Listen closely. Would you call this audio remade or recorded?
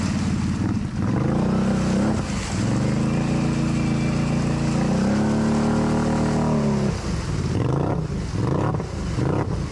recorded